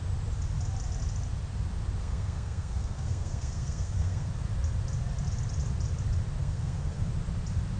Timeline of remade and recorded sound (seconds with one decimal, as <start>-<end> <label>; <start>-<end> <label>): 0.0-2.0 recorded; 2.0-4.3 remade; 4.3-6.4 recorded; 6.4-7.1 remade; 7.1-7.8 recorded